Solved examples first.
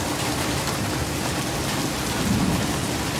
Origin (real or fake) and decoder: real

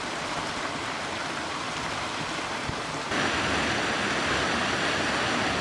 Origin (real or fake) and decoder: real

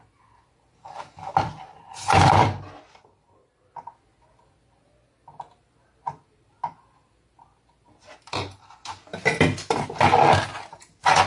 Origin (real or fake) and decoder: real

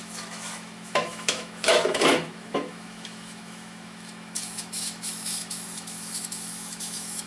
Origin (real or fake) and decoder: fake, autoencoder, DAC-VAE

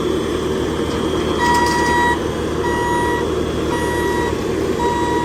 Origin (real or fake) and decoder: real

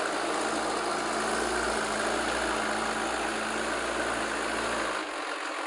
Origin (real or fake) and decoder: real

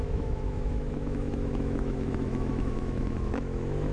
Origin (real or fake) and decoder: fake, autoencoder, DAC-VAE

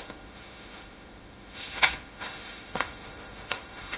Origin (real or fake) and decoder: fake, autoencoder, DAC-VAE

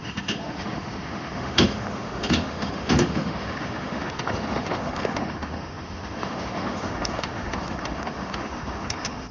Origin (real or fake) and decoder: fake, autoencoder, DAC-VAE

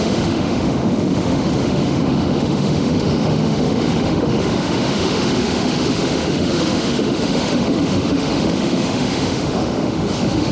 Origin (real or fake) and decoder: fake, autoencoder, DAC-VAE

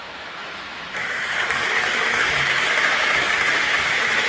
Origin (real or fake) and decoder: fake, autoencoder, DAC-VAE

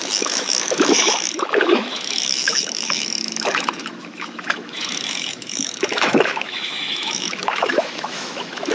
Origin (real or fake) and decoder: fake, autoencoder, DAC-VAE